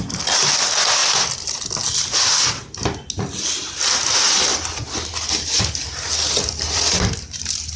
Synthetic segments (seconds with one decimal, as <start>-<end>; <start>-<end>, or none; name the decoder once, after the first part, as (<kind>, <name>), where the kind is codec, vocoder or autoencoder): none